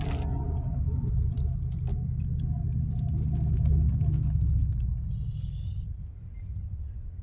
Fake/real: real